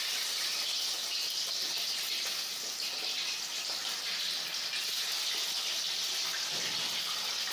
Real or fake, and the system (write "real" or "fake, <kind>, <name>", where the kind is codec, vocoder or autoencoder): real